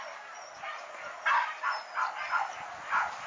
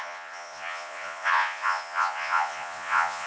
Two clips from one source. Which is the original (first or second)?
first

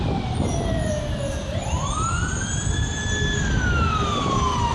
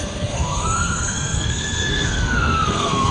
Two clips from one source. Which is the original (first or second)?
first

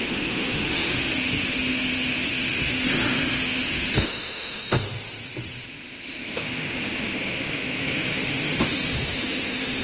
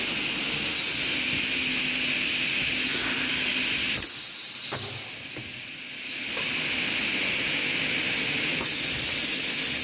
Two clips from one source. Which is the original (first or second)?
second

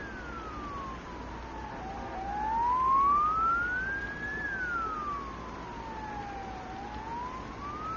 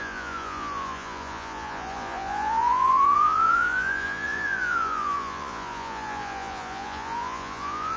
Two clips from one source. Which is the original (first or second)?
first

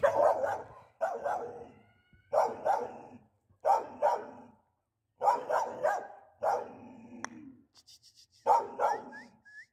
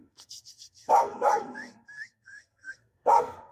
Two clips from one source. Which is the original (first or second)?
first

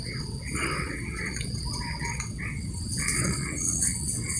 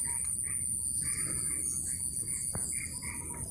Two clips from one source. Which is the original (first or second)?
second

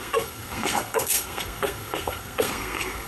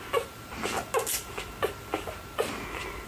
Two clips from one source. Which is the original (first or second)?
second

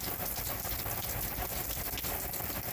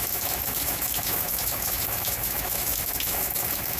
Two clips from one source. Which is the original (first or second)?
first